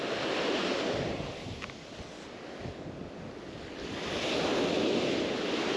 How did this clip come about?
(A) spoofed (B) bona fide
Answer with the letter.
B